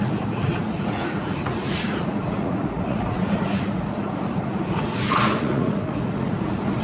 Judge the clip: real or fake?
fake